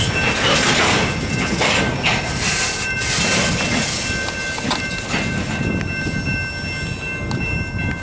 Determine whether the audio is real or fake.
real